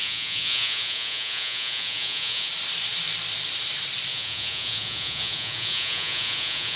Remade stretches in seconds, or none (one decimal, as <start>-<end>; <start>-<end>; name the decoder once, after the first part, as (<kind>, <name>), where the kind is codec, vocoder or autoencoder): 0.0-2.5 (vocoder, Vocos); 4.1-6.8